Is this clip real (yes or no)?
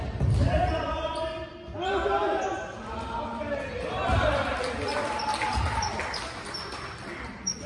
yes